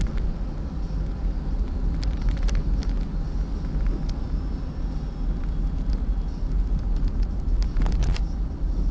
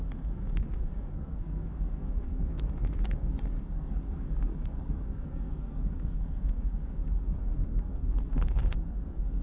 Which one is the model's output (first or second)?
second